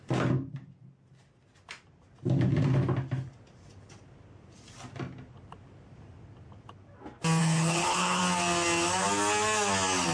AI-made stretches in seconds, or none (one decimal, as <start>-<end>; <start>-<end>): 7.4-8.2